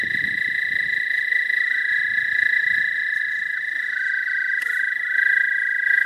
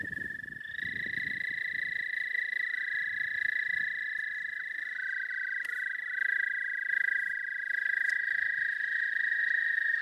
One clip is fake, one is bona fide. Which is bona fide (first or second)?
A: second